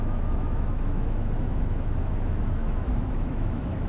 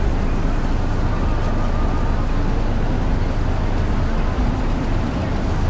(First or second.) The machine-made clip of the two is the first